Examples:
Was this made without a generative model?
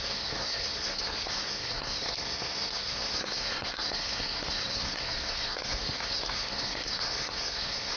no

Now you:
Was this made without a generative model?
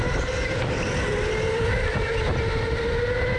yes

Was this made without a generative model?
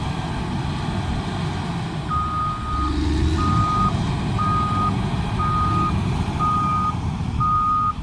yes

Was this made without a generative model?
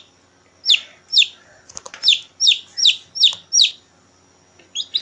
yes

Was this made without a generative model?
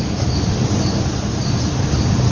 yes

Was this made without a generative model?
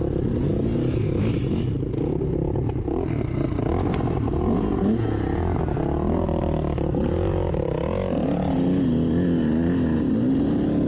yes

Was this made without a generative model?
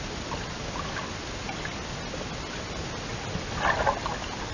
yes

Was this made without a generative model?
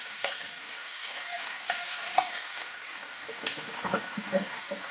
no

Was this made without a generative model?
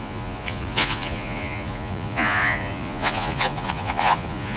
no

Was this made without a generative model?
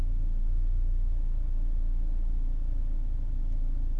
yes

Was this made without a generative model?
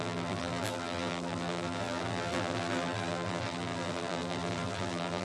no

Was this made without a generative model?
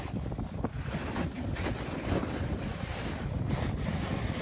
yes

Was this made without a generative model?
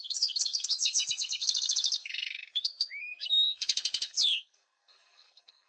no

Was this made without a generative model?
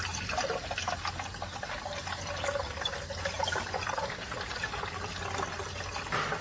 yes